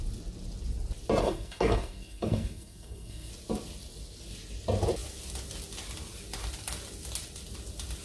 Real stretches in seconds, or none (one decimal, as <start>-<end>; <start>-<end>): 0.0-1.2; 3.3-8.0